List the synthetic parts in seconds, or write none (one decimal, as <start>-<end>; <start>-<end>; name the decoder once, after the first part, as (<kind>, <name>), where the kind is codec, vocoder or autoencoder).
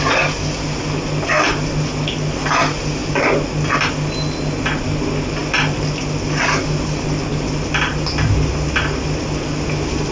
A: none